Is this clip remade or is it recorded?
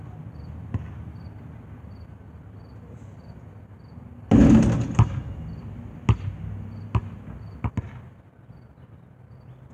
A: recorded